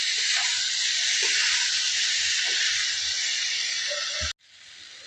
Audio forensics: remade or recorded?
recorded